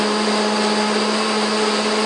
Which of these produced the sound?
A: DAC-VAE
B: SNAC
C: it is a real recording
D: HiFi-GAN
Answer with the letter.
C